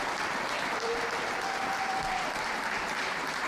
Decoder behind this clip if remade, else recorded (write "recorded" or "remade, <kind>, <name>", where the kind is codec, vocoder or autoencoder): recorded